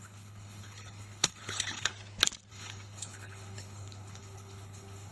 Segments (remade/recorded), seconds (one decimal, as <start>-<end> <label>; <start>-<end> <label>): 0.0-1.9 remade; 1.9-2.5 recorded; 2.5-5.1 remade